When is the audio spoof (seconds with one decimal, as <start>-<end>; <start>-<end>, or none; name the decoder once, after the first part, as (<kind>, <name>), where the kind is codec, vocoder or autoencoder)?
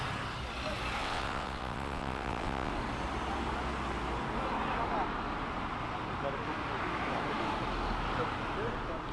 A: 1.0-2.7 (vocoder, WaveNeXt)